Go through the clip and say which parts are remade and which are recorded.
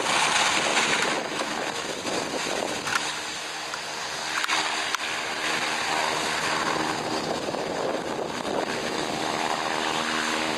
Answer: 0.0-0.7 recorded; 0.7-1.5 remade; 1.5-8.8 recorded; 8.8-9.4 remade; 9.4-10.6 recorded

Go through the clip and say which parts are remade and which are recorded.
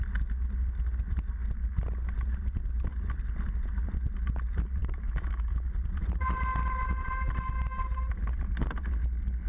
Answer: 0.0-4.8 recorded; 4.8-5.7 remade; 5.7-9.5 recorded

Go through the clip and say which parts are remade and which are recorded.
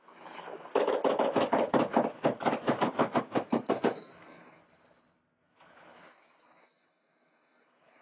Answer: 0.0-4.6 remade; 4.6-5.3 recorded; 5.3-8.0 remade